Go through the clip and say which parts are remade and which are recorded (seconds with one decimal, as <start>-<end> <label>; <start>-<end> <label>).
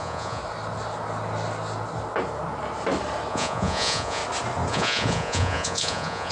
0.0-0.4 remade; 0.4-3.3 recorded; 3.3-4.2 remade; 4.2-4.7 recorded; 4.7-6.3 remade